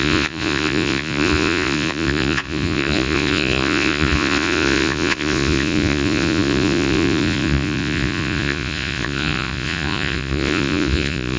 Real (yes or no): no